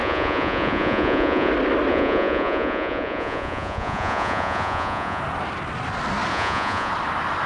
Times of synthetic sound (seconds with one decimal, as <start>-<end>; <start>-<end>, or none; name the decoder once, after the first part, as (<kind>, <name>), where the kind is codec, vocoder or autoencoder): 0.0-1.5 (vocoder, Vocos); 1.9-5.2; 6.3-6.9